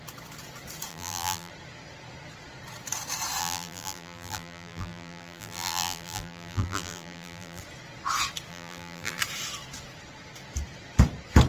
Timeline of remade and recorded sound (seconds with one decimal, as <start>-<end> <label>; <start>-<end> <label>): 0.0-0.9 recorded; 0.9-1.5 remade; 1.5-3.4 recorded; 3.4-7.6 remade; 7.6-8.5 recorded; 8.5-9.2 remade; 9.2-11.5 recorded

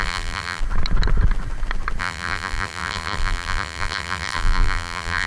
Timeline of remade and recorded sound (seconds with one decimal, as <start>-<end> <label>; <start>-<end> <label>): 0.0-0.6 remade; 0.6-2.0 recorded; 2.0-5.3 remade

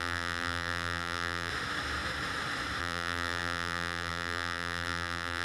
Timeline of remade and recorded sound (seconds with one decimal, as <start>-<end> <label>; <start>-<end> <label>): 0.0-1.5 remade; 1.5-2.8 recorded; 2.8-5.4 remade

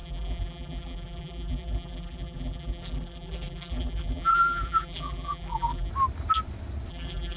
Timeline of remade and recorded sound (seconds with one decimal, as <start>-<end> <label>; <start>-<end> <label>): 0.0-5.9 remade; 5.9-6.9 recorded; 6.9-7.4 remade

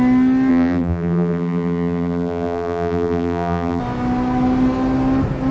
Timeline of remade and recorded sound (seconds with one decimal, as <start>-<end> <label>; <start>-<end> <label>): 0.0-0.5 recorded; 0.5-3.8 remade; 3.8-5.5 recorded